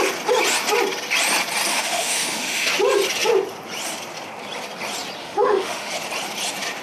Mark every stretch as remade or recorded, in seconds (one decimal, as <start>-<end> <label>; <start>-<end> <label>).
0.0-1.7 recorded; 1.7-2.7 remade; 2.7-5.2 recorded; 5.2-5.9 remade; 5.9-6.8 recorded